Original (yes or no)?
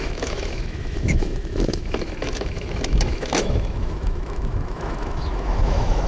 no